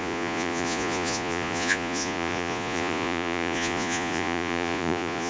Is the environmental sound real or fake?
fake